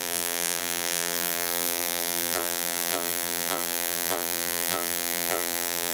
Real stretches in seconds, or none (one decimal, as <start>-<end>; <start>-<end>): none